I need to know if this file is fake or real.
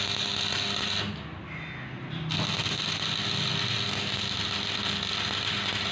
real